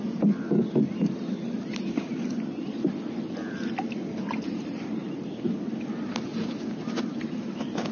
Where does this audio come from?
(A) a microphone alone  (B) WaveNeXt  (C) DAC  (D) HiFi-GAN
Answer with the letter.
A